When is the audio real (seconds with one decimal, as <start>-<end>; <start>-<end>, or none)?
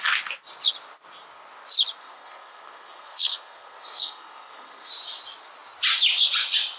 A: 0.0-2.0; 4.9-6.8